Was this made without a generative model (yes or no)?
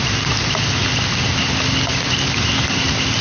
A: yes